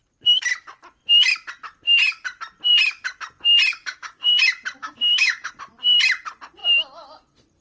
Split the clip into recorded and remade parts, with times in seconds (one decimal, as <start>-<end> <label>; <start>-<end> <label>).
0.0-3.7 recorded; 3.7-4.3 remade; 4.3-4.8 recorded; 4.8-5.5 remade; 5.5-7.6 recorded